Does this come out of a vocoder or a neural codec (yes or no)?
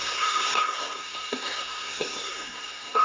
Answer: yes